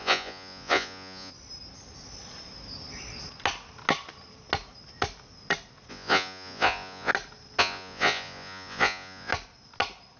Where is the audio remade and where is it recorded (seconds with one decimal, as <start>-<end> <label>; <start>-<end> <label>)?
0.0-1.3 remade; 1.3-5.9 recorded; 5.9-7.1 remade; 7.1-7.6 recorded; 7.6-9.3 remade; 9.3-10.2 recorded